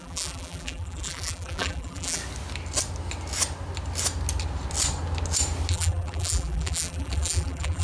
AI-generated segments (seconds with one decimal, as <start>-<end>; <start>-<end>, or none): 0.0-2.2; 5.7-7.8